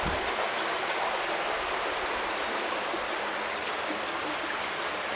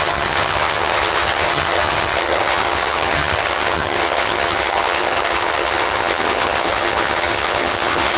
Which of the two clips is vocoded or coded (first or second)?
second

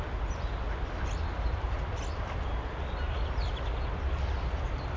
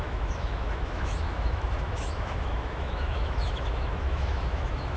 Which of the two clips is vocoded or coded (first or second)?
second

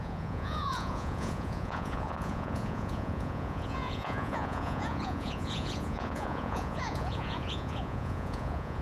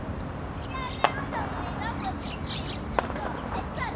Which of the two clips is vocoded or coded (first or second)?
first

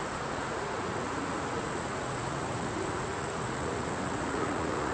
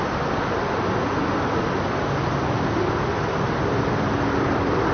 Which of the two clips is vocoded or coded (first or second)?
first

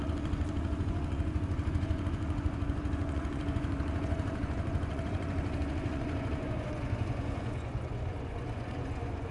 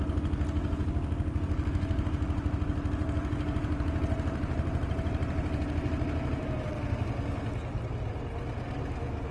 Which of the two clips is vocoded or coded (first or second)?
first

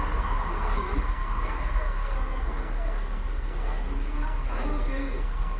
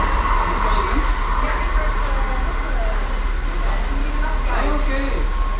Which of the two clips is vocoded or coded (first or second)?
first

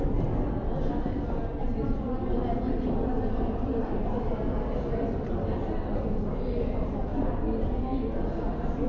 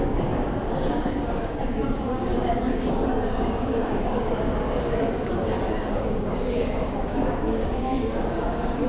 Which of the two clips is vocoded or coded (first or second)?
second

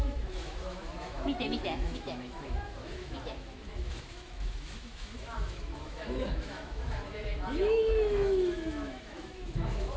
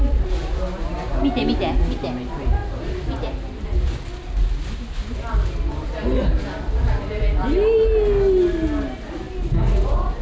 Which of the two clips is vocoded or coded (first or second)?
first